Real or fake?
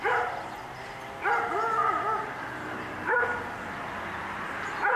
real